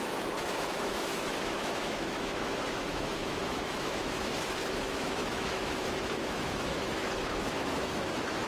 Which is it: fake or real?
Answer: fake